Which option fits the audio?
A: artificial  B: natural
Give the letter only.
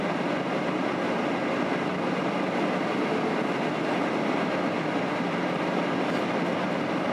B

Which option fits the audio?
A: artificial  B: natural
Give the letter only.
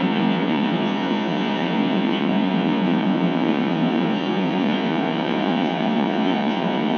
A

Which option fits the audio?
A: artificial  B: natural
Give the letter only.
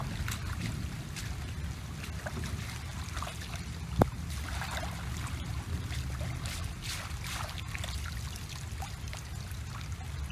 B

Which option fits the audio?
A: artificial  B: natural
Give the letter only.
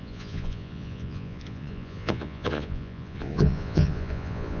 A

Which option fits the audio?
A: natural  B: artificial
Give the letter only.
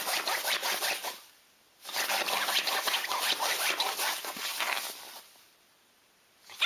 A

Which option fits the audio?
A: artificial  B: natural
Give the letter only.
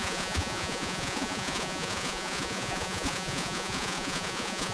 A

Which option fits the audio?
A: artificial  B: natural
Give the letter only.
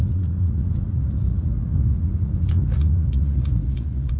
A